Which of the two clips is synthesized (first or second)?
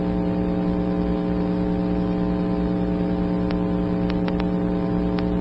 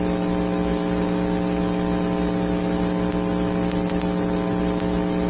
first